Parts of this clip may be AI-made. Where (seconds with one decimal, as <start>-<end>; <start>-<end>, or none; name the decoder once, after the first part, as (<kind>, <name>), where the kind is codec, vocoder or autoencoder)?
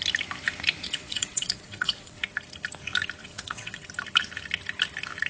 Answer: 0.8-2.2 (vocoder, WaveNeXt); 3.2-3.9